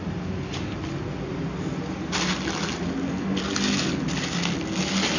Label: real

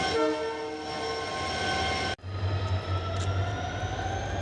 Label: real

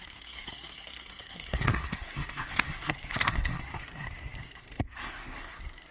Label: fake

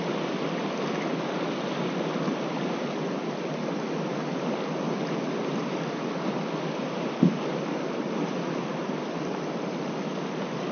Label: real